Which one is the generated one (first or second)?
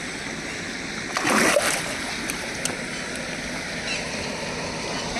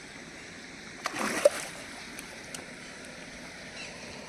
second